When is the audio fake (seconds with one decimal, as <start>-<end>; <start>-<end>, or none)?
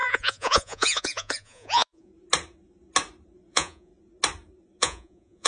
0.0-2.1; 3.5-3.9; 4.8-5.5